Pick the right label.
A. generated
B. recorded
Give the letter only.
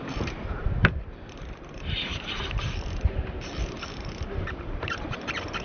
A